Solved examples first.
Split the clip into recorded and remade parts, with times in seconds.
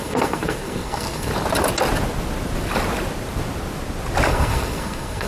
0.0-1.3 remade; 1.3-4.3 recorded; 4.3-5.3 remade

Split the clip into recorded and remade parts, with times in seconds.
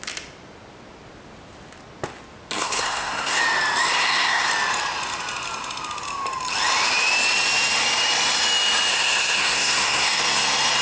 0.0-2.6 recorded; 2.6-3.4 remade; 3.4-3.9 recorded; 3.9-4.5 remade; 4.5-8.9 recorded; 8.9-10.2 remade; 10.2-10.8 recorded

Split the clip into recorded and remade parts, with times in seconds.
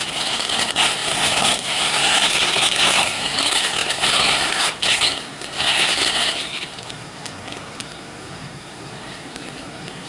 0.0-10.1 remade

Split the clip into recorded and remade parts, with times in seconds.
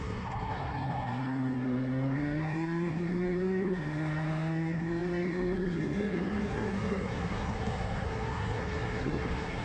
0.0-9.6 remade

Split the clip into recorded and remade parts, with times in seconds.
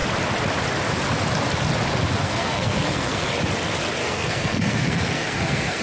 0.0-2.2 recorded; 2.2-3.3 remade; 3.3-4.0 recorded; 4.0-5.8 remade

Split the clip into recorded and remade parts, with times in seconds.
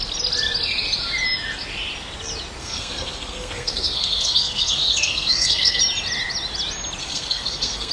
0.0-2.6 recorded; 2.6-5.8 remade; 5.8-7.0 recorded; 7.0-7.9 remade